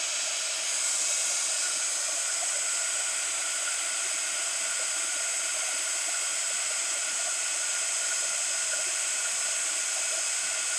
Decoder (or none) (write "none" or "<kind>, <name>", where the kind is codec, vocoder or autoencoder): none